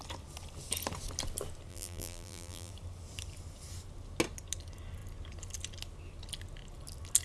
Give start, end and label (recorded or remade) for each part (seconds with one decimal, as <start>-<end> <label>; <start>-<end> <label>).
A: 0.0-1.7 recorded; 1.7-2.7 remade; 2.7-7.2 recorded